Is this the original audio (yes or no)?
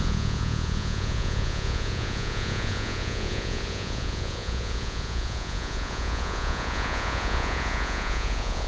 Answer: no